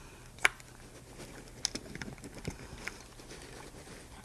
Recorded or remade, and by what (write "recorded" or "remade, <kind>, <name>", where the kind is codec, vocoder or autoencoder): recorded